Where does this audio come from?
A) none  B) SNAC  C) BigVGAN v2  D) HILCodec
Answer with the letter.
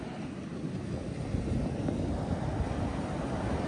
A